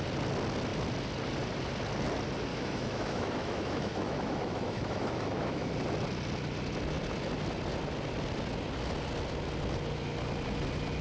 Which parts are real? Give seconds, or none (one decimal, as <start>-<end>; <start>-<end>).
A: 0.0-2.5; 5.7-11.0